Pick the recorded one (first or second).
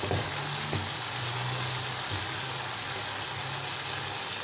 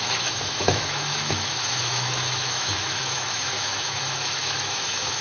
first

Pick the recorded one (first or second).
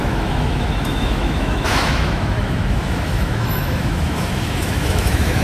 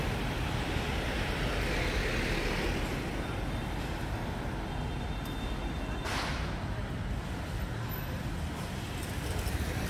second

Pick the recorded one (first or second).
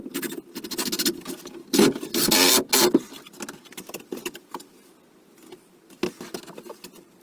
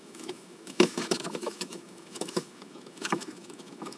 first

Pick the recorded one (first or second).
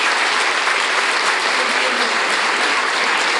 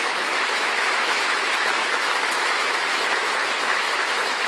first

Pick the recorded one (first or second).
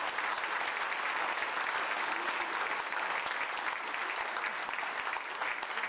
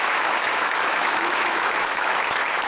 first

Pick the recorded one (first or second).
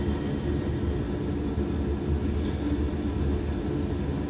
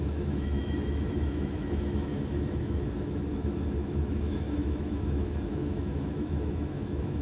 first